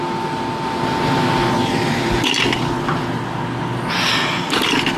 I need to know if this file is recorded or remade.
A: recorded